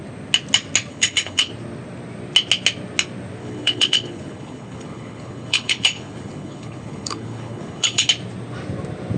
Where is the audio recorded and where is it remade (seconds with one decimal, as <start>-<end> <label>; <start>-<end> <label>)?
0.0-0.9 recorded; 0.9-1.5 remade; 1.5-3.4 recorded; 3.4-8.1 remade; 8.1-9.2 recorded